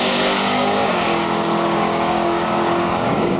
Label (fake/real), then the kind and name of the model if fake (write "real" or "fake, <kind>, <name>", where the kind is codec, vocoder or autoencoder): fake, codec, DAC